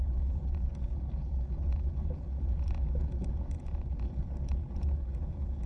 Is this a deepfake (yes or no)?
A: yes